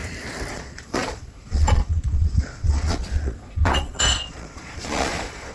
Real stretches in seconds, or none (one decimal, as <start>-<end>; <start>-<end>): 0.0-0.5